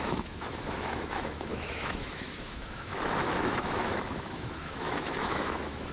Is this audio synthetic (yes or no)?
yes